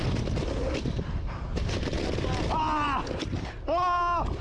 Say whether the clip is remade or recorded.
recorded